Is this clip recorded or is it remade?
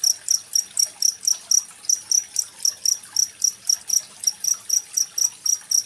remade